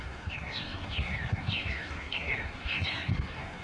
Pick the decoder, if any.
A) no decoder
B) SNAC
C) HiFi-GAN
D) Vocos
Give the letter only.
B